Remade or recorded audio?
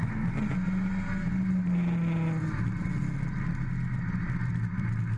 recorded